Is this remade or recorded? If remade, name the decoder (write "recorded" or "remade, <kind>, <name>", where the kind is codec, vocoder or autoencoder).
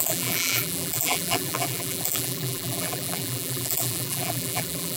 remade, vocoder, BigVGAN v2